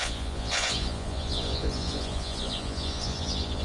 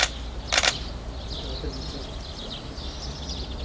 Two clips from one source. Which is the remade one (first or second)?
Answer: first